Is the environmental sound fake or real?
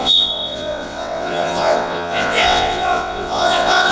fake